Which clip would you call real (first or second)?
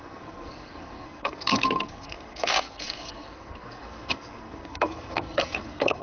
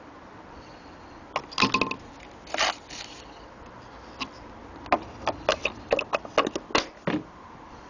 second